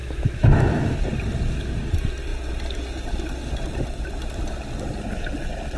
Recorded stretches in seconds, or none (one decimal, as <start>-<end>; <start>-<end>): 1.0-5.8